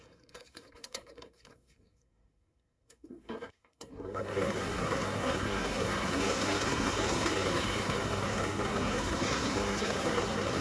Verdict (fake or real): fake